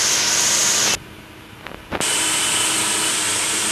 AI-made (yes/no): no